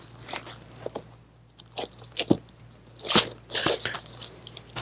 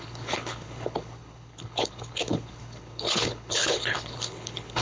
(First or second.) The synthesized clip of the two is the second